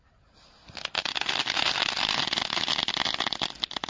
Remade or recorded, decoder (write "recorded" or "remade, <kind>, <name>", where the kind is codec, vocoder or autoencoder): recorded